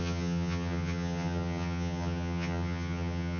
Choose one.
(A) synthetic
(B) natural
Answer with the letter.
A